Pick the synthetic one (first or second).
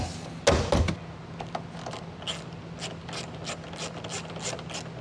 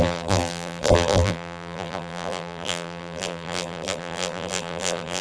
second